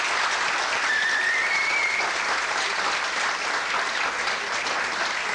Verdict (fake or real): real